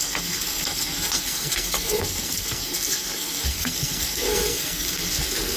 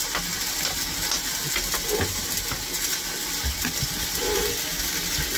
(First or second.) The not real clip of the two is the first